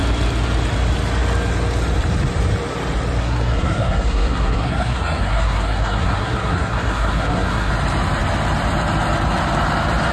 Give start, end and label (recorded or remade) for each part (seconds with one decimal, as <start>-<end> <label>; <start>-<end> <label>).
0.0-3.2 recorded; 3.2-7.7 remade; 7.7-10.1 recorded